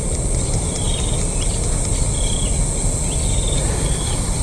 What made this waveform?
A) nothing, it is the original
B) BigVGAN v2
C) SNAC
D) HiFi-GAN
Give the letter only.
A